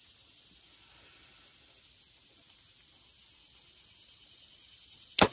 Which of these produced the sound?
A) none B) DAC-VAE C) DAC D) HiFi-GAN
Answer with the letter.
A